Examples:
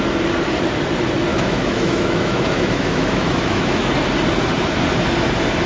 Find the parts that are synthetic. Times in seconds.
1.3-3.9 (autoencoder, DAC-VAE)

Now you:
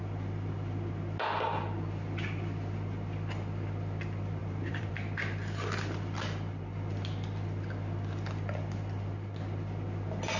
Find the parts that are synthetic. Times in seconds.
4.4-4.9 (vocoder, BigVGAN v2)

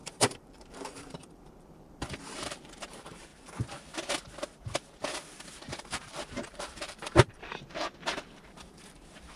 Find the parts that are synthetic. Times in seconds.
0.0-3.3 (vocoder, BigVGAN v2); 5.8-9.4

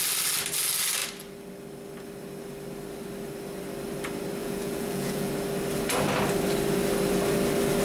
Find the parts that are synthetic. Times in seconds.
4.4-5.3 (vocoder, Vocos)

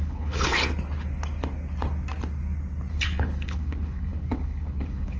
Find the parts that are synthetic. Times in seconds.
0.0-0.6 (codec, HILCodec); 2.9-5.2

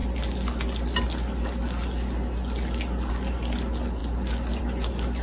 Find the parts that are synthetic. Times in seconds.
none

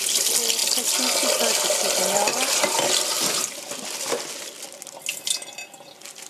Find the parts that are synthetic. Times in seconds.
0.6-4.4 (vocoder, BigVGAN v2)

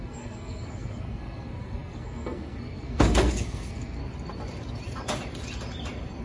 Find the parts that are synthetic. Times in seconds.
0.0-4.0 (codec, SNAC)